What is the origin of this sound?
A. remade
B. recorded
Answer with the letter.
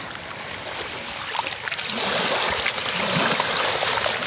B